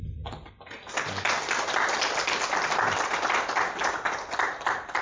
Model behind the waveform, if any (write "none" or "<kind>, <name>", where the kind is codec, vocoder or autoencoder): none